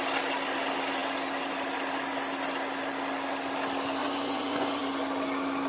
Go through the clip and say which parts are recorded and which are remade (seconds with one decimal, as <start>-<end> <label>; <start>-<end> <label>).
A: 0.0-4.0 recorded; 4.0-4.8 remade; 4.8-5.7 recorded